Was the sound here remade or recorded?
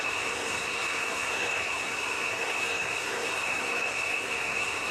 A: remade